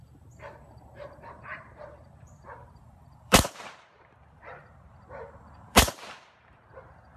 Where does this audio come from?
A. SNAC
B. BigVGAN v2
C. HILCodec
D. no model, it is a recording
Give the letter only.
B